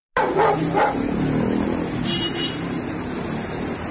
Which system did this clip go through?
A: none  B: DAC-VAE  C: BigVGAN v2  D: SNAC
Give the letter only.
A